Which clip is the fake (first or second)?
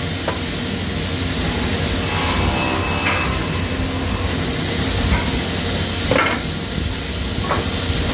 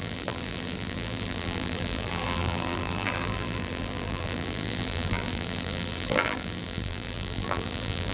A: second